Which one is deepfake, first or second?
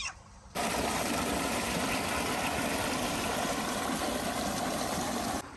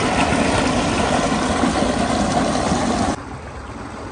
first